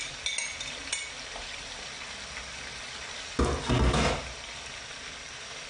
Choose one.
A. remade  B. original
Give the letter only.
B